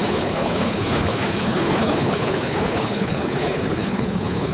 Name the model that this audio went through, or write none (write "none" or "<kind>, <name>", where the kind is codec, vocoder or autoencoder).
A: codec, HILCodec